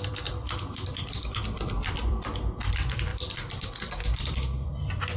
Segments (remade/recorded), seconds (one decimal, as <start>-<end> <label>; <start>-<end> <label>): 0.0-5.2 remade